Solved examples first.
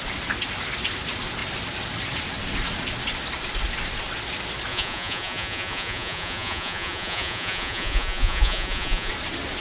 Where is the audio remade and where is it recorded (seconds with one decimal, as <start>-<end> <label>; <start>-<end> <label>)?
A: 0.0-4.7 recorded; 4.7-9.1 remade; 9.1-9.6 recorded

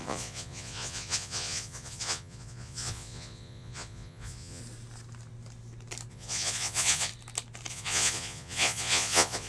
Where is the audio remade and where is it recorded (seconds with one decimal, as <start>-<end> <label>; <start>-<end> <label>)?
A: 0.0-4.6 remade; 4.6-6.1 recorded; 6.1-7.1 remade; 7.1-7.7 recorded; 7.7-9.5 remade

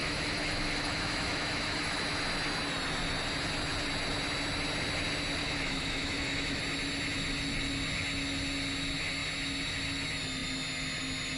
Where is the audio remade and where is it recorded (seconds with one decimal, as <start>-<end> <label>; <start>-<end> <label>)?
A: 0.0-2.0 remade; 2.0-5.4 recorded; 5.4-6.6 remade; 6.6-11.4 recorded

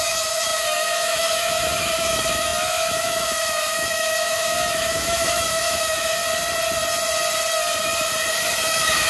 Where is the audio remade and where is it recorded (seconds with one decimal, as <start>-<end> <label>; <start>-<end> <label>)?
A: 0.0-6.2 remade; 6.2-8.3 recorded; 8.3-9.1 remade